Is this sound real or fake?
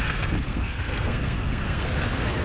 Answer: fake